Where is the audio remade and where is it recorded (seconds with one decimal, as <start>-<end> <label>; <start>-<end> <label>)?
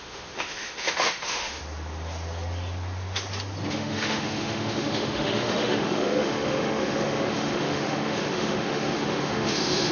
0.0-1.6 remade; 1.6-3.7 recorded; 3.7-9.9 remade